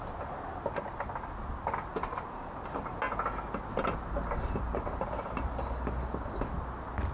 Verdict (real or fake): real